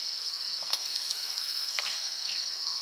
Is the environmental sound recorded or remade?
remade